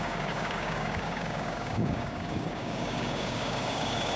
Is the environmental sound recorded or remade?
remade